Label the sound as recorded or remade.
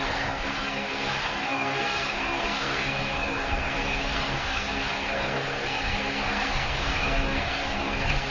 remade